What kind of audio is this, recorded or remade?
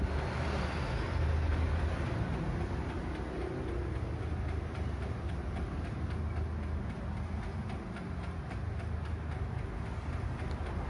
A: recorded